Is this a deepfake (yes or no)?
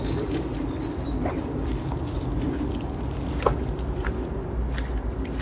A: no